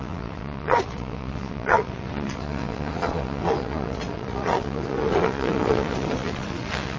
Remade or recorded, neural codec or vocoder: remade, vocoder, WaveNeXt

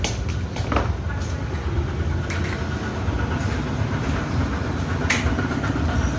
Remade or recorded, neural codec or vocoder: recorded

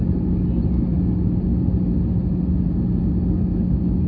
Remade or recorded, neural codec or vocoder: recorded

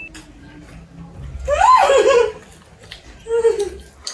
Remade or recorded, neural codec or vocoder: recorded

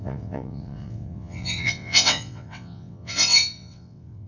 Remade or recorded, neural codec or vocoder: remade, vocoder, WaveNeXt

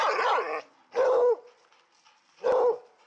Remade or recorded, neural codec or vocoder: recorded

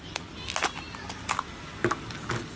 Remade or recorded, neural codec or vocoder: recorded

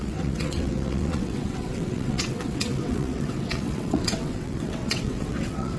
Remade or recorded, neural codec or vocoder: remade, vocoder, WaveNeXt